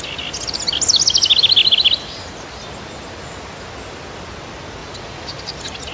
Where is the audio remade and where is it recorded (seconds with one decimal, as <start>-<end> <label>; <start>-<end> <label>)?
0.0-4.8 recorded; 4.8-5.4 remade; 5.4-5.9 recorded